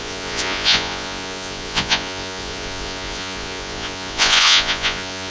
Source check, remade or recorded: remade